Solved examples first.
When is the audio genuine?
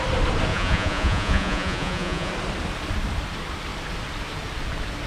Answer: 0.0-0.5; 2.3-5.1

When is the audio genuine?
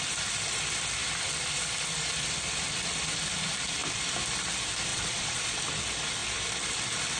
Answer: 0.0-4.9; 5.6-7.2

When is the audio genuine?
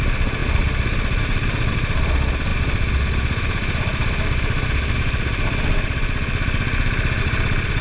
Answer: 0.0-7.8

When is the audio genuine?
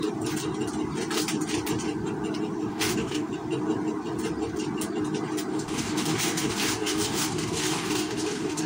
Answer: 0.0-2.7; 3.3-5.5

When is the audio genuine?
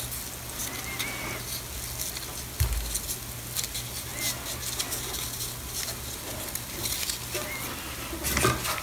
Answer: 0.0-8.8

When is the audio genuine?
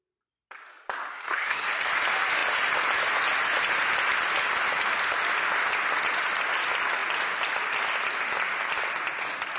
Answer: 0.0-1.1; 1.7-9.6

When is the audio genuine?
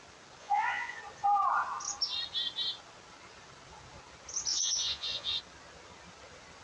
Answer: 0.0-0.4; 1.0-4.5; 5.4-6.6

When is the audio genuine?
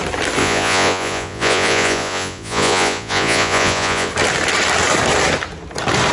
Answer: 0.0-0.4; 4.1-6.1